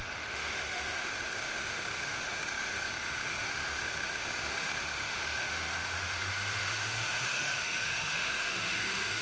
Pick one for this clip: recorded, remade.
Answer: remade